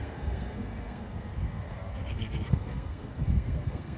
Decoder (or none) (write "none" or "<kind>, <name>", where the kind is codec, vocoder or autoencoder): codec, SNAC